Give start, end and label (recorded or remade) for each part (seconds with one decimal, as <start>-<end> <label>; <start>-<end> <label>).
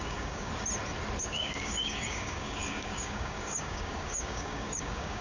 0.0-0.5 remade; 0.5-1.2 recorded; 1.2-5.2 remade